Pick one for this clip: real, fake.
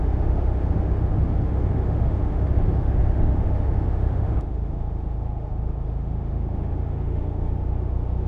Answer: fake